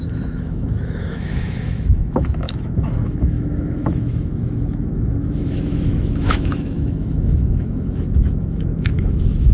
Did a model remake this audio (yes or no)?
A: yes